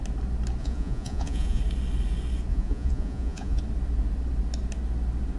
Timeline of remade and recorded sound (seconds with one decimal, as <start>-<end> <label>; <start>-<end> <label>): 0.0-0.6 recorded; 0.6-1.6 remade; 1.6-2.5 recorded; 2.5-3.6 remade; 3.6-5.4 recorded